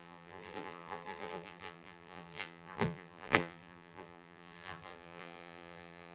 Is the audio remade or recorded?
remade